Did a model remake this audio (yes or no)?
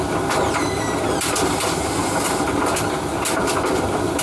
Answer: no